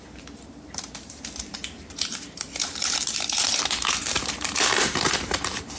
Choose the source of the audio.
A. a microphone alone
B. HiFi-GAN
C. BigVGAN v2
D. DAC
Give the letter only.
C